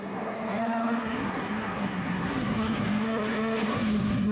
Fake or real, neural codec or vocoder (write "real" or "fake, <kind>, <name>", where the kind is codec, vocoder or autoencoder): fake, codec, SNAC